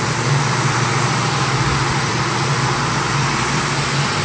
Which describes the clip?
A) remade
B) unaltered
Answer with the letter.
A